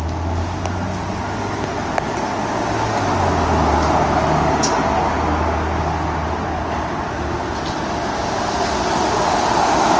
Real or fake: real